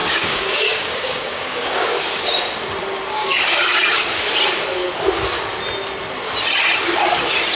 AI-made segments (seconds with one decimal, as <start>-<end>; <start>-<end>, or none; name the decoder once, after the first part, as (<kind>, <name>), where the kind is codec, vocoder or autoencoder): 0.0-2.2 (codec, DAC); 3.2-4.2